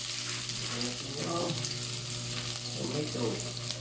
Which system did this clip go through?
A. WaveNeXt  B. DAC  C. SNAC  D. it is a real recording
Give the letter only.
D